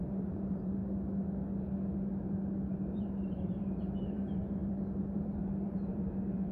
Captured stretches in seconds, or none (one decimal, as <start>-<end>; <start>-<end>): 0.8-2.7